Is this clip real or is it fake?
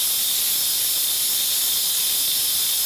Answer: real